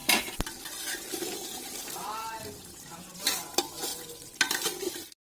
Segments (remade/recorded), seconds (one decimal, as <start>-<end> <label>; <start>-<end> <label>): 0.0-5.2 recorded